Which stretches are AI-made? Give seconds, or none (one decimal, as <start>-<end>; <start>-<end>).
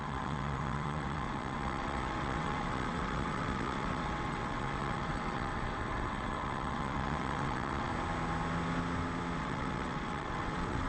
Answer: 0.0-7.9; 9.4-10.9